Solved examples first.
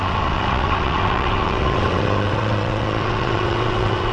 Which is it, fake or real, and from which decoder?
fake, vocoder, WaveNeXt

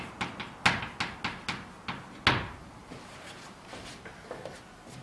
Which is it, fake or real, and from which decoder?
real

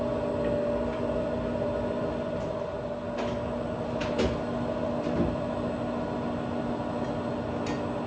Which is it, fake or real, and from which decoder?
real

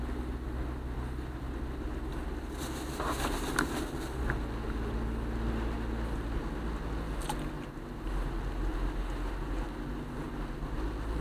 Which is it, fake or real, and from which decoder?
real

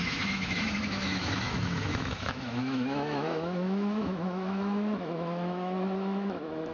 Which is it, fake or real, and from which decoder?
fake, autoencoder, DAC-VAE